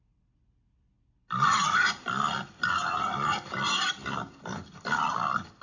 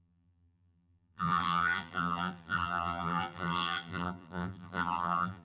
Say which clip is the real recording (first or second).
first